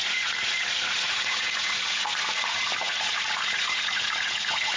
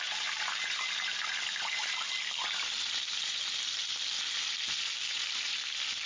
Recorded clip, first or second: second